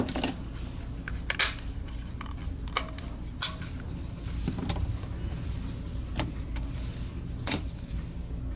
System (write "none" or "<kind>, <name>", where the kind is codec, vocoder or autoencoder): none